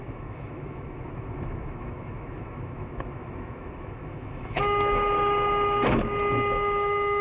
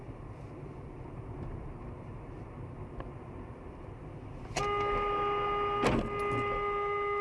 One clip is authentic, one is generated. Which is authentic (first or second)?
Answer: second